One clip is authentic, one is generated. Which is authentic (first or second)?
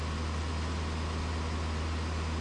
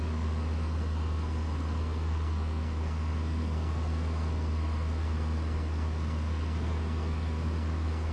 first